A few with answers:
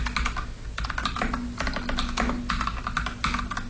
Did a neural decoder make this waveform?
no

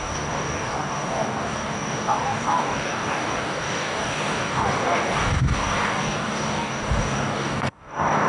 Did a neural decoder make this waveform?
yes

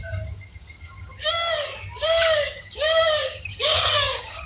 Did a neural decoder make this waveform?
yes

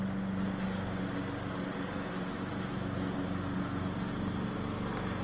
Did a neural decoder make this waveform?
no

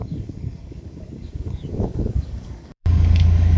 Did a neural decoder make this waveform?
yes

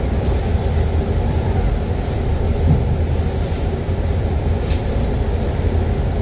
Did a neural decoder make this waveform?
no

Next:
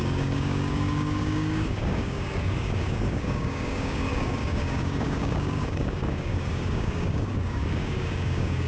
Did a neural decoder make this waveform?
yes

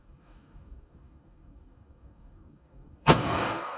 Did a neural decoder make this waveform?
yes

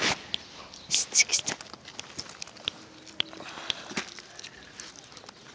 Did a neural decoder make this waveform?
no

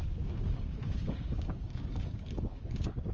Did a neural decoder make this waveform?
yes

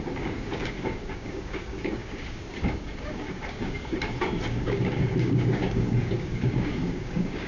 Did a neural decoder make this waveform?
yes